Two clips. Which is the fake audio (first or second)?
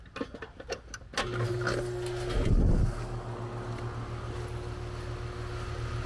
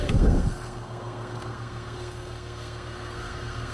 second